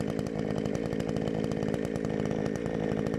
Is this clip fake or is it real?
real